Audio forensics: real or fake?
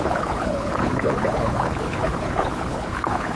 fake